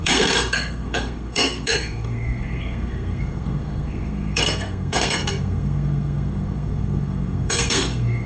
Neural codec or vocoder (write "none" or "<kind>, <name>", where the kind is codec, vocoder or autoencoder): codec, SNAC